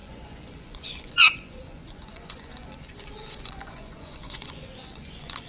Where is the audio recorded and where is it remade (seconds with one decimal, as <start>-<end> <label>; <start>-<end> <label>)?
0.0-5.5 remade